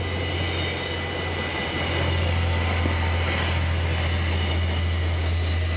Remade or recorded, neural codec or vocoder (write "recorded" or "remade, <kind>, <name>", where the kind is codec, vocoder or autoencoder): recorded